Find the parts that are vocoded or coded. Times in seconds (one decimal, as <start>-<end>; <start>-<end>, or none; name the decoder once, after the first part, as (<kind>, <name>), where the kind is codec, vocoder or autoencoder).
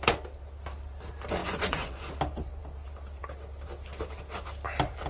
1.4-2.1 (vocoder, Vocos)